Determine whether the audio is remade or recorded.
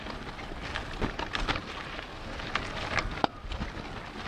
recorded